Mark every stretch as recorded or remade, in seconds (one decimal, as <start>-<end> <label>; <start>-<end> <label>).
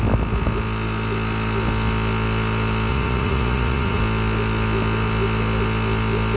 0.0-2.9 recorded; 2.9-4.0 remade; 4.0-6.4 recorded